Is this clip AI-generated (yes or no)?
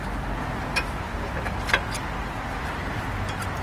no